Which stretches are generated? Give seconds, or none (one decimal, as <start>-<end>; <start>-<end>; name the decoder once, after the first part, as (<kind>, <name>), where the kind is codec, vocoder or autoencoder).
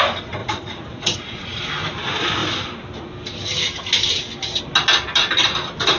0.4-1.6 (vocoder, Vocos)